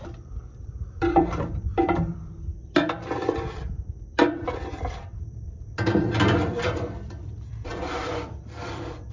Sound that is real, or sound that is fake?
fake